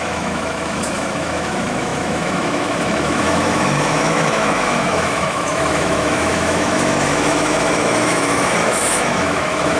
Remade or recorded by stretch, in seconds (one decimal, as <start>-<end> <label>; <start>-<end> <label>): 0.0-9.8 remade